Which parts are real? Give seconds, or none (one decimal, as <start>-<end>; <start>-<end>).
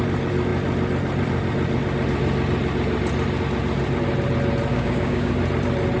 0.0-4.7; 5.3-6.0